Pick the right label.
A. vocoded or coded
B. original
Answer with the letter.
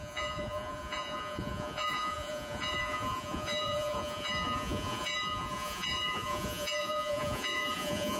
A